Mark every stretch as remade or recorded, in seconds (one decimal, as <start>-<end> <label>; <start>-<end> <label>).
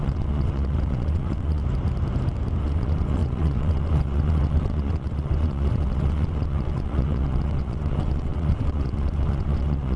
0.0-1.6 remade; 1.6-2.6 recorded; 2.6-10.0 remade